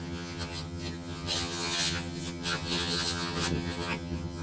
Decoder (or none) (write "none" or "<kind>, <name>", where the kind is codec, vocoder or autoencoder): vocoder, HiFi-GAN